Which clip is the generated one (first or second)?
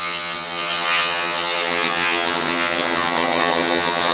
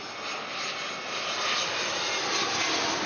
first